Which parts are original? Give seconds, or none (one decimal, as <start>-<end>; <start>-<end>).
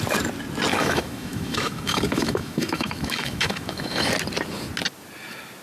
0.0-0.7; 4.1-5.6